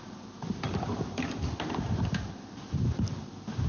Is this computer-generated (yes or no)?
yes